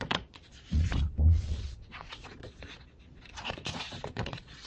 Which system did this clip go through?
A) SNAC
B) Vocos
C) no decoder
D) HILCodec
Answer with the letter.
B